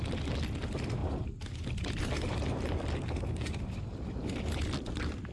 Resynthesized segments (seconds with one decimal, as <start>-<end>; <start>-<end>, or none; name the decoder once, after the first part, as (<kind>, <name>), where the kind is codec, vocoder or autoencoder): none